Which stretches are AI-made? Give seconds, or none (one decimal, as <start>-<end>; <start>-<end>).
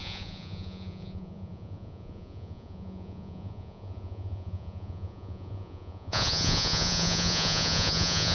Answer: 0.0-8.3